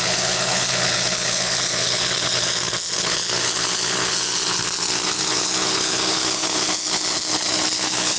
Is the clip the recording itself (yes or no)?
no